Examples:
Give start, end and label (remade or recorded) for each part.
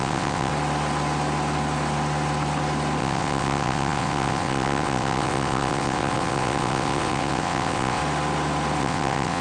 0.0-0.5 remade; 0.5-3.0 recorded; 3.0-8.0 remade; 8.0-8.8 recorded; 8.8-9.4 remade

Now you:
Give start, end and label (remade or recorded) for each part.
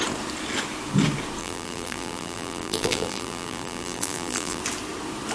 0.0-1.4 recorded; 1.4-4.6 remade; 4.6-5.3 recorded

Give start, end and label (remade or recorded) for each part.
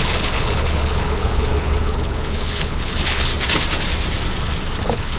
0.0-3.3 remade; 3.3-4.8 recorded; 4.8-5.2 remade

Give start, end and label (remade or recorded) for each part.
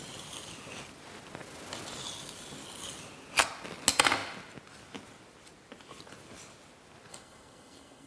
0.0-7.1 recorded; 7.1-8.1 remade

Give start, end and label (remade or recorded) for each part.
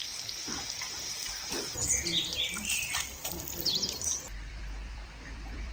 0.0-1.8 remade; 1.8-2.8 recorded; 2.8-3.2 remade; 3.2-3.7 recorded; 3.7-5.7 remade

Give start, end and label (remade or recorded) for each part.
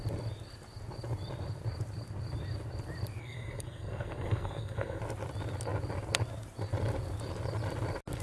0.0-3.2 recorded; 3.2-5.0 remade; 5.0-8.2 recorded